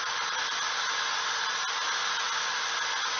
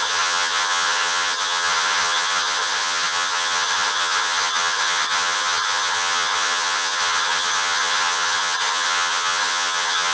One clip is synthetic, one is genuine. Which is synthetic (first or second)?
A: second